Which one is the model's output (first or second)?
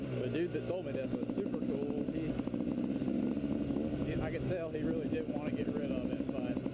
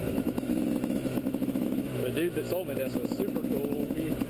second